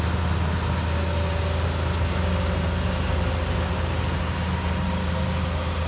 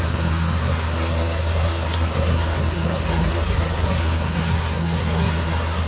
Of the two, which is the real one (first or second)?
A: first